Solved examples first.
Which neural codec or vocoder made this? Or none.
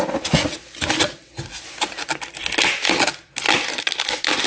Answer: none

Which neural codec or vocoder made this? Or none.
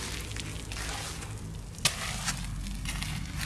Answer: none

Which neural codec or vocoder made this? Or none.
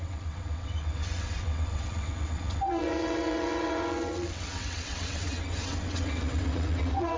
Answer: vocoder, WaveNeXt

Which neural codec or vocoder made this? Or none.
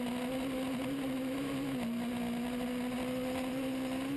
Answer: none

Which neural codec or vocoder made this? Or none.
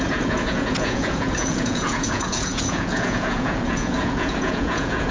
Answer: vocoder, Vocos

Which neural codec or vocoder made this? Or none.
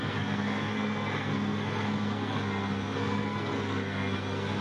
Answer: codec, SNAC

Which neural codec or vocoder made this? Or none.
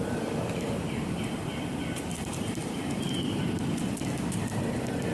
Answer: none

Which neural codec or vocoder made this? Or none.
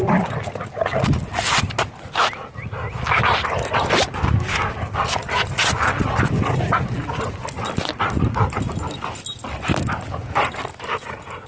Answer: none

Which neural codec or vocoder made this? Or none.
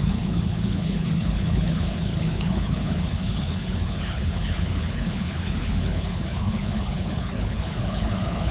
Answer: codec, HILCodec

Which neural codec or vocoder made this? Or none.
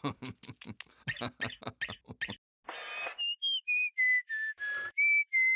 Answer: none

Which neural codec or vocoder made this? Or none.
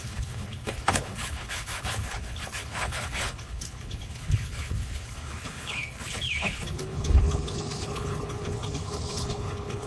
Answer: codec, HILCodec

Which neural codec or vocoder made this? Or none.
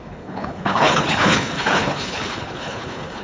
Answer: codec, HILCodec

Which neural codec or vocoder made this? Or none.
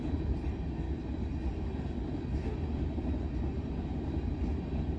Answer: none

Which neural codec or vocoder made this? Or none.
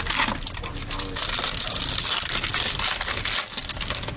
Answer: none